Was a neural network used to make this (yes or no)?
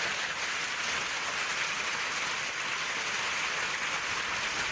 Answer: no